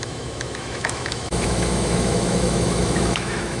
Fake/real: fake